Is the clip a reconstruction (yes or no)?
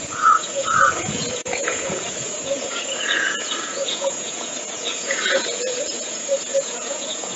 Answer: yes